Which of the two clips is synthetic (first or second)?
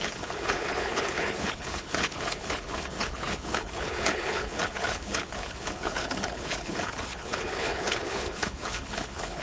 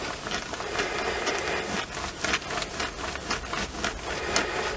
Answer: first